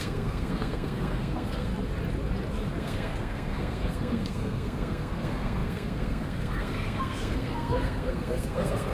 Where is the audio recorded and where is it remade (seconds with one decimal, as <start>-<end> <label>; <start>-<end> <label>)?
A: 0.0-1.7 remade; 1.7-2.8 recorded; 2.8-8.9 remade